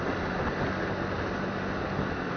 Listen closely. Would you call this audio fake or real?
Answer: real